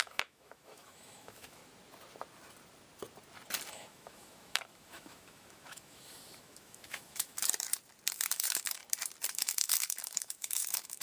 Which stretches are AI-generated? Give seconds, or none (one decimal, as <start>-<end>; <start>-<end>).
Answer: 0.0-1.6; 3.7-7.4; 8.1-8.8; 9.3-11.0